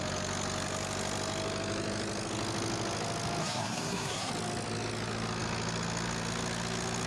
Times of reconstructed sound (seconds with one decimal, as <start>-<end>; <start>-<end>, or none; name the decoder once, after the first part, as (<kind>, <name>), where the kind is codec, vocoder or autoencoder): 3.4-4.3 (codec, SNAC)